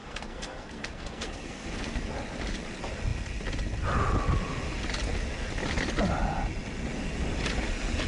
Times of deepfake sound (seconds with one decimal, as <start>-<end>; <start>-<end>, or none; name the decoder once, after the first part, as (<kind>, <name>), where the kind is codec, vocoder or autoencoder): 0.0-2.0 (codec, SNAC)